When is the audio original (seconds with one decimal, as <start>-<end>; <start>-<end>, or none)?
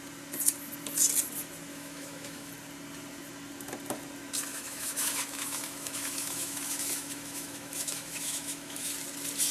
0.0-1.7; 2.5-4.5; 8.9-9.5